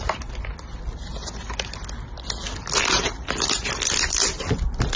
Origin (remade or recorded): recorded